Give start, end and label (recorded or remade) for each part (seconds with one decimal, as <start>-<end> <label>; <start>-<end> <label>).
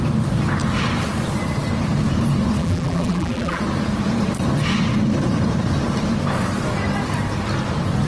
0.0-2.6 recorded; 2.6-3.6 remade; 3.6-8.1 recorded